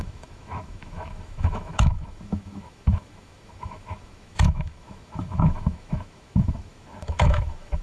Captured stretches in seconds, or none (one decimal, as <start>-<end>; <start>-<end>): none